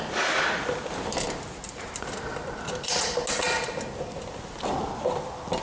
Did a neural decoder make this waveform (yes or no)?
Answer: no